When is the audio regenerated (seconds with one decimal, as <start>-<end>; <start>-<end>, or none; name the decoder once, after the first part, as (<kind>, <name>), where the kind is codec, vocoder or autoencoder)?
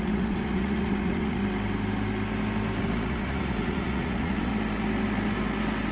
0.0-1.4 (vocoder, Vocos); 2.8-4.5